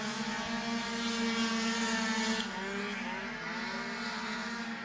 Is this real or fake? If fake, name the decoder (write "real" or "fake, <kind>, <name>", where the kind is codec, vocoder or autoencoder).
real